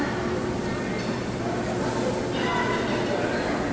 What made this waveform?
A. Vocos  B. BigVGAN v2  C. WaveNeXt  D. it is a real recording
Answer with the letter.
D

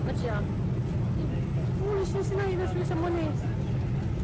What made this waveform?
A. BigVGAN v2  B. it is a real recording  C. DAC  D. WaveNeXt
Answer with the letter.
B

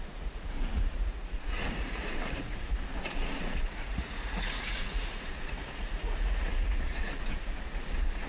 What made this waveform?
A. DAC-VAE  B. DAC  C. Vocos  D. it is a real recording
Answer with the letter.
C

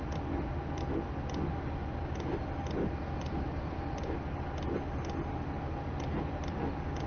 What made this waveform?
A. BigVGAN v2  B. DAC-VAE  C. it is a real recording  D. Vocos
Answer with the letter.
C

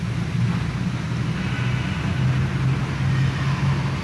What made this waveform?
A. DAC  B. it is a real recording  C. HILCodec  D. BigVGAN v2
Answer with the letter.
B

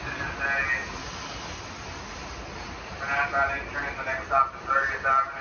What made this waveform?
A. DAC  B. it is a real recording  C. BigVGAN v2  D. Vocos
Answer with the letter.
B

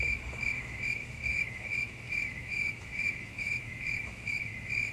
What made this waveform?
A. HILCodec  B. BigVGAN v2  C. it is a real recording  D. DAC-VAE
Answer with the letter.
D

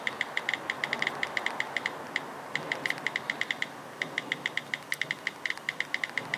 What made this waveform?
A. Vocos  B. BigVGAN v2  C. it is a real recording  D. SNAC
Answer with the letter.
C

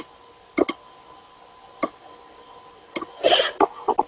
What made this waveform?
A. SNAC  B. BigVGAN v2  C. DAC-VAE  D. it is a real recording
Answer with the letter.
D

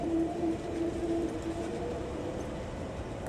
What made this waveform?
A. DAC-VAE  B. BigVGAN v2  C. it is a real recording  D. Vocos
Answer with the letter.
B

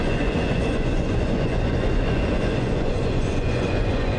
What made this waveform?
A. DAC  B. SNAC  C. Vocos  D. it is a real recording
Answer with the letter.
C